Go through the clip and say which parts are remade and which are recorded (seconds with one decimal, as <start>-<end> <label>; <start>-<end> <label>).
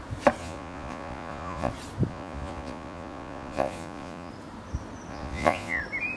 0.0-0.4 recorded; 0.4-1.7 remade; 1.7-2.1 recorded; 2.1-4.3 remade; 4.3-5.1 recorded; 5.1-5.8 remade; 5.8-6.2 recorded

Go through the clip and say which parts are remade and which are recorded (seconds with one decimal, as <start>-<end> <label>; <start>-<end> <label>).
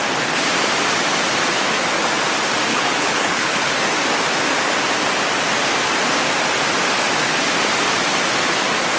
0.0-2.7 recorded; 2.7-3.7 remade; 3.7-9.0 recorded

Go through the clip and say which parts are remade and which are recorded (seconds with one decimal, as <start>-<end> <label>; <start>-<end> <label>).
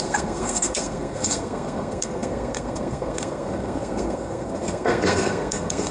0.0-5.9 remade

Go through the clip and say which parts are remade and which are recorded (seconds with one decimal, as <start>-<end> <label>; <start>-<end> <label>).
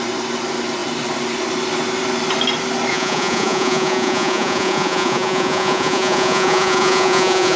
0.0-2.9 recorded; 2.9-7.6 remade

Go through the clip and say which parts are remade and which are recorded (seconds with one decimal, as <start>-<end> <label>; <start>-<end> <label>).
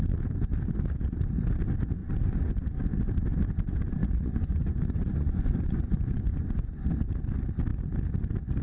0.0-2.0 recorded; 2.0-2.8 remade; 2.8-4.0 recorded; 4.0-6.9 remade; 6.9-8.6 recorded